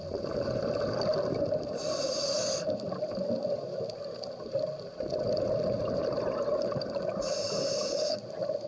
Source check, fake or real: real